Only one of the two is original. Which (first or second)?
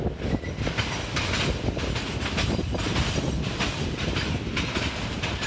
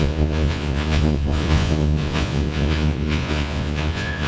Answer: first